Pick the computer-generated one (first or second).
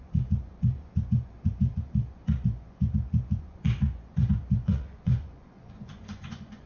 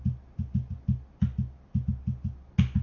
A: first